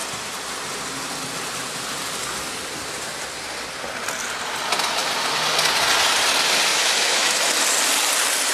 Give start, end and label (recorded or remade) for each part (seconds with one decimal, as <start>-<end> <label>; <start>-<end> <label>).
0.0-6.7 recorded; 6.7-7.4 remade; 7.4-8.5 recorded